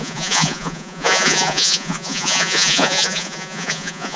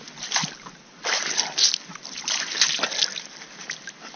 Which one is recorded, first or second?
second